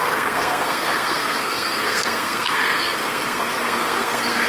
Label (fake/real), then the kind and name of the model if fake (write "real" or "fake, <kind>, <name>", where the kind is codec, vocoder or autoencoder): fake, codec, SNAC